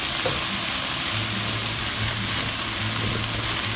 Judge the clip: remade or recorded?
recorded